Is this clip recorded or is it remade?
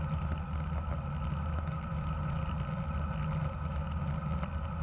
recorded